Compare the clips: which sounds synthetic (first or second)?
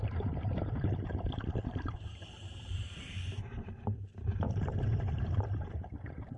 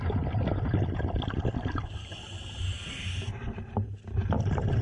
first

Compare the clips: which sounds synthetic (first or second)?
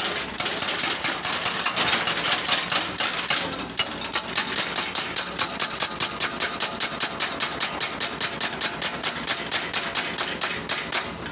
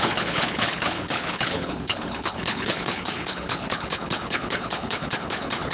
second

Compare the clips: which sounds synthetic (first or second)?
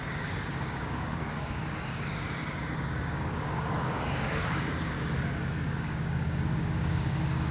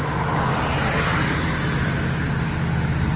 first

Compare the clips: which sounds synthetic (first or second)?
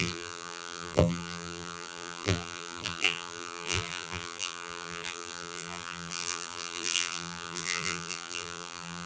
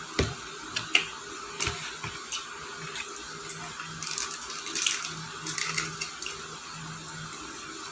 first